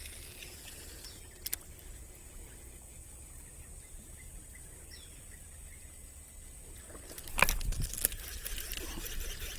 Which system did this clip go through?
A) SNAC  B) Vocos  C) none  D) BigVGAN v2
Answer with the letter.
C